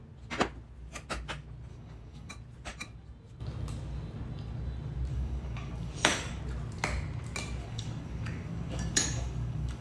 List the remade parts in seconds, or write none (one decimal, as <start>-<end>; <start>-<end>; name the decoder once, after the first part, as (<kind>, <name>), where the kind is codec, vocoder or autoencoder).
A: 1.7-2.3 (codec, DAC); 5.1-6.4; 7.6-9.8